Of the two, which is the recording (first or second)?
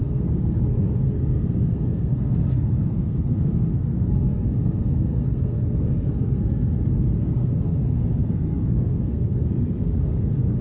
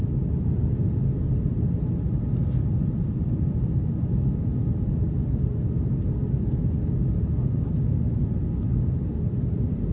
second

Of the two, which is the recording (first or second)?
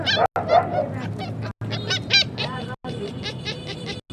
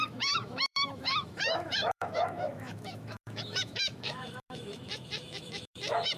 first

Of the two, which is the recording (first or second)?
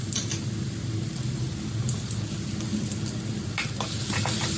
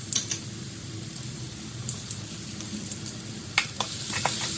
first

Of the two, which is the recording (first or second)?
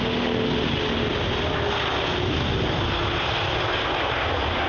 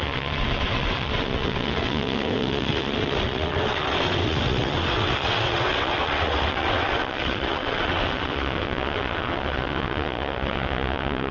first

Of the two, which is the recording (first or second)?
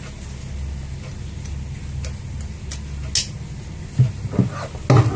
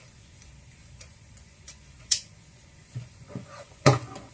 first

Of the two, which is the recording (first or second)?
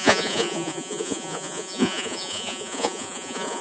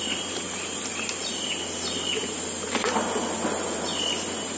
second